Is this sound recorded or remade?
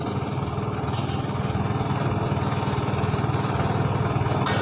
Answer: recorded